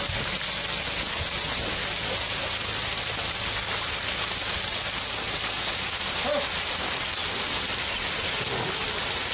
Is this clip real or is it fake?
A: real